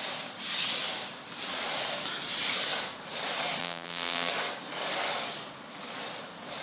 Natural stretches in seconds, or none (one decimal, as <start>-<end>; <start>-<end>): 0.0-3.6; 4.3-6.6